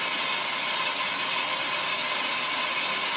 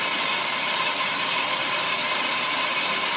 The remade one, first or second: second